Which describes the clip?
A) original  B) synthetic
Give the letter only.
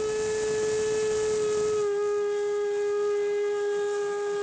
A